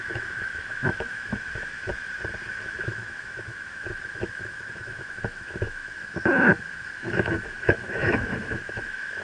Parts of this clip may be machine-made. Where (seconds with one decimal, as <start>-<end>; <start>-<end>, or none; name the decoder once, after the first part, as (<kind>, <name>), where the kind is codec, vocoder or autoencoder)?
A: 0.0-1.9 (autoencoder, DAC-VAE); 2.5-9.2